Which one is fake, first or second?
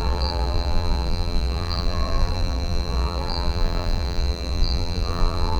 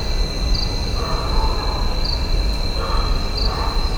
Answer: first